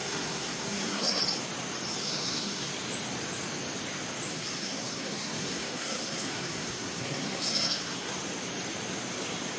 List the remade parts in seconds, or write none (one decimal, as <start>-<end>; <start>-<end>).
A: 0.0-1.2; 2.0-2.7; 4.3-8.1